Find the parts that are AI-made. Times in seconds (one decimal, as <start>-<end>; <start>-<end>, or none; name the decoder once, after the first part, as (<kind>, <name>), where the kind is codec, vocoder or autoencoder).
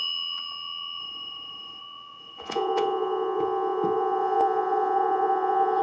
1.0-1.8 (vocoder, Vocos); 2.2-5.8